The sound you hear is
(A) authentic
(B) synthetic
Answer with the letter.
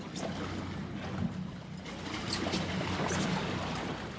A